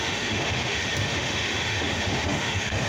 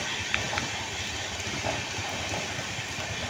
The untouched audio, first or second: second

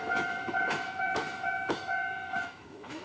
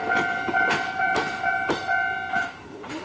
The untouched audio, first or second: second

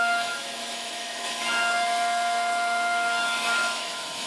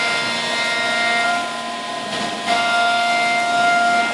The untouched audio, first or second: second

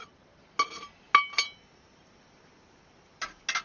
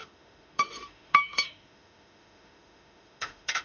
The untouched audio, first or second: first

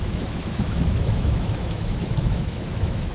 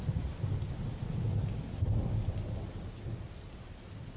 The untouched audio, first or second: second